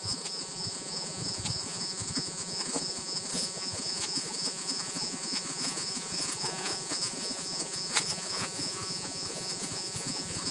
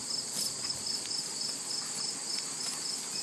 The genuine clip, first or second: second